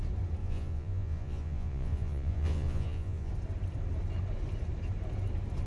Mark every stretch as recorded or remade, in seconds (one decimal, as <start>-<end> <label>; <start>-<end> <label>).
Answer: 0.0-0.4 recorded; 0.4-3.3 remade; 3.3-5.7 recorded